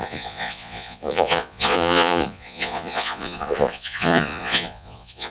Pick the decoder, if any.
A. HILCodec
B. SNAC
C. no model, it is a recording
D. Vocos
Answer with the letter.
D